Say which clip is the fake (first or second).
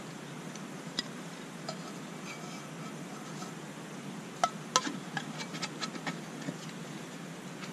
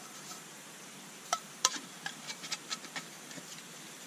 second